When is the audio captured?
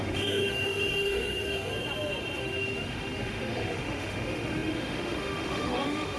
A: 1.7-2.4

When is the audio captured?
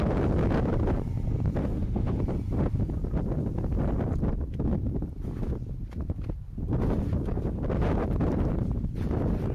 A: 0.0-1.6; 2.2-9.5